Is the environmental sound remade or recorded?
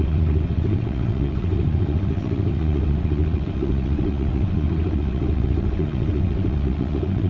remade